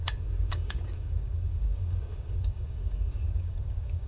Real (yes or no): no